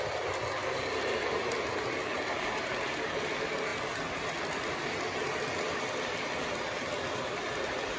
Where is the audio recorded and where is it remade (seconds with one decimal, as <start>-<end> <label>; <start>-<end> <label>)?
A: 0.0-0.6 recorded; 0.6-3.3 remade; 3.3-8.0 recorded